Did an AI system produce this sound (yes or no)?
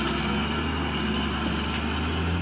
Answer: no